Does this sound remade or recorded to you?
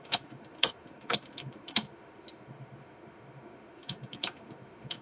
remade